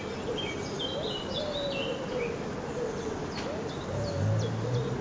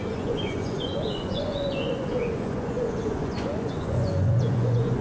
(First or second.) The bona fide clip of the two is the first